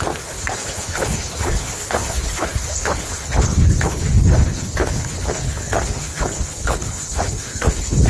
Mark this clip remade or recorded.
remade